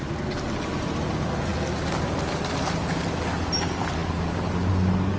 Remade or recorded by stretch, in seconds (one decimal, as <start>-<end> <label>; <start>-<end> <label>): 0.0-5.2 recorded